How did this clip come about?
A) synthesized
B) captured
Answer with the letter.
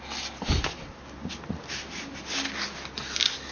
B